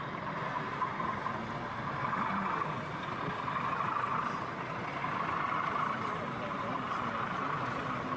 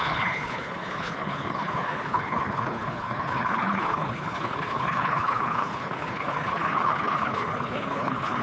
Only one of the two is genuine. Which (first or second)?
first